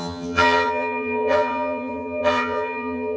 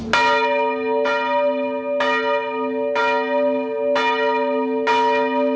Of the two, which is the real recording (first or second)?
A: second